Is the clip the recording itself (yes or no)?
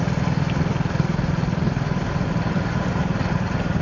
yes